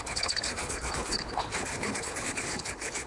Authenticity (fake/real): fake